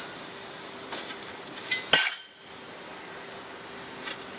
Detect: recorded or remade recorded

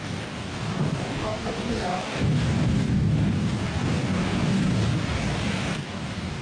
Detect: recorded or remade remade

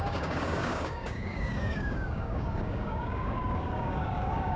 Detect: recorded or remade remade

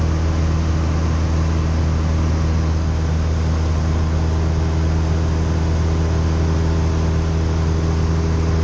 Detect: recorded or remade recorded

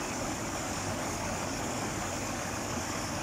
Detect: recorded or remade remade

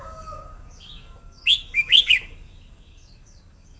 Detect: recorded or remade remade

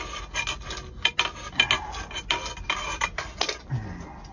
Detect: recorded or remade recorded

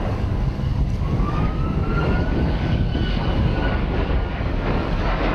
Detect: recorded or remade remade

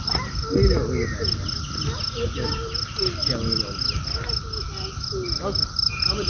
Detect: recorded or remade recorded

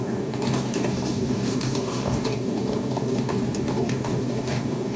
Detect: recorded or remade remade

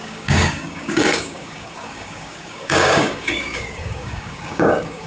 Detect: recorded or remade remade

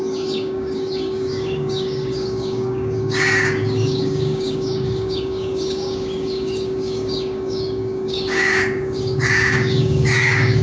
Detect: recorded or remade remade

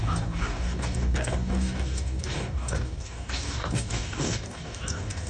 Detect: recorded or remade remade